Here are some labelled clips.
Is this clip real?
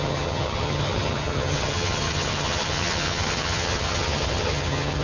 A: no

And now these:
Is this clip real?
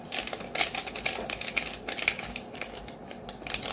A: yes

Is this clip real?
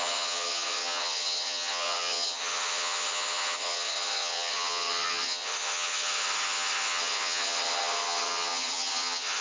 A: no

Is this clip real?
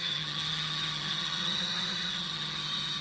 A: no